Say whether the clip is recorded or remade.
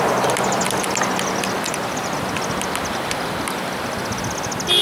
recorded